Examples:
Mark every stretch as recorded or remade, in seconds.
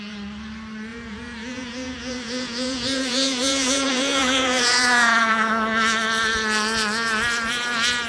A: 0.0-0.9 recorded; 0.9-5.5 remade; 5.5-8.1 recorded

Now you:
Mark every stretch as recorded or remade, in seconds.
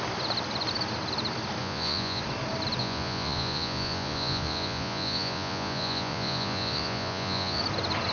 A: 0.0-1.6 recorded; 1.6-2.2 remade; 2.2-2.8 recorded; 2.8-7.6 remade; 7.6-8.1 recorded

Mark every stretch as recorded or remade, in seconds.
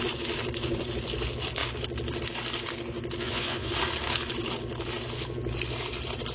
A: 0.0-3.2 recorded; 3.2-3.7 remade; 3.7-6.3 recorded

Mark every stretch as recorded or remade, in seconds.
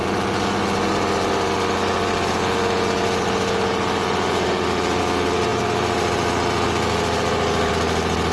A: 0.0-8.3 recorded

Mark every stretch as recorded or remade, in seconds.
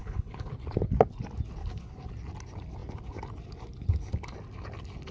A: 0.0-0.5 remade; 0.5-1.6 recorded; 1.6-2.1 remade; 2.1-5.1 recorded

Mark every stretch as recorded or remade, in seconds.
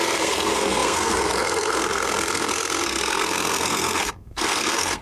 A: 0.0-5.0 remade